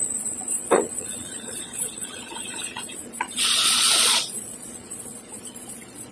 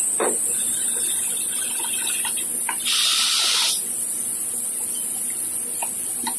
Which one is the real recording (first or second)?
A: second